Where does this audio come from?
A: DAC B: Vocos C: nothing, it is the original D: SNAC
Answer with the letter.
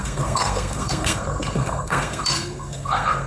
D